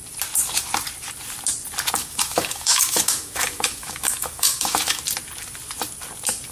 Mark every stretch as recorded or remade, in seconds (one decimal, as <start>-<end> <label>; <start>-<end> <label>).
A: 0.0-2.0 recorded; 2.0-5.0 remade; 5.0-6.5 recorded